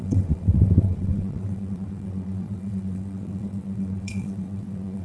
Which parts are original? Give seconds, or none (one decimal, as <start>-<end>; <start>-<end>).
none